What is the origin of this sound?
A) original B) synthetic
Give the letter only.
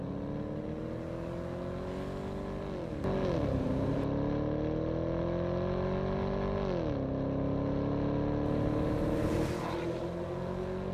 A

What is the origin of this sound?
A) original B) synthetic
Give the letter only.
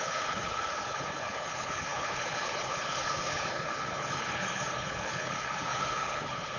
B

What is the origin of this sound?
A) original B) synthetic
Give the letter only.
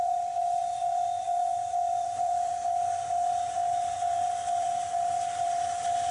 B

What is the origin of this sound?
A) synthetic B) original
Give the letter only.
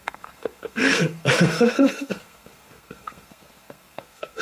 A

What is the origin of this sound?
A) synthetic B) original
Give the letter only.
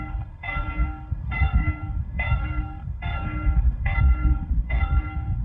A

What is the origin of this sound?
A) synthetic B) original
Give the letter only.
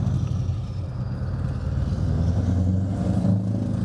B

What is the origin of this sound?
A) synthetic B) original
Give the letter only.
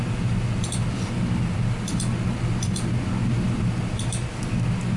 B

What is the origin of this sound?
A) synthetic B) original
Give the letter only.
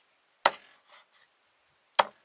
B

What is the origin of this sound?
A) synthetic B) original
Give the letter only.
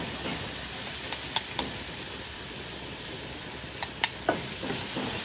B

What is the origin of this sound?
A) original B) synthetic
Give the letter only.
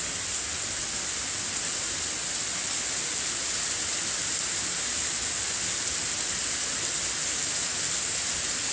A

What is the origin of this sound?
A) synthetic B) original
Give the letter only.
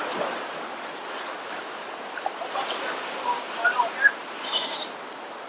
B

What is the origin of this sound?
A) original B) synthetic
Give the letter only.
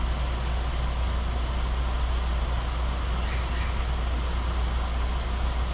A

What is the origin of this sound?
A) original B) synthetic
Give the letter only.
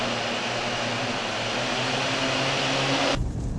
A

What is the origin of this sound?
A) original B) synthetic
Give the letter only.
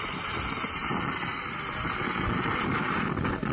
A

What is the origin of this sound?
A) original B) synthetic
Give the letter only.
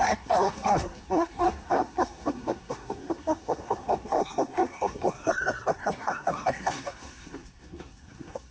B